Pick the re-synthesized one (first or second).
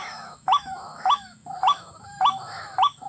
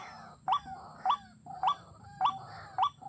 first